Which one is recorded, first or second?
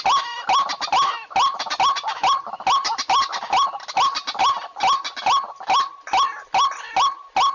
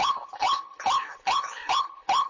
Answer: first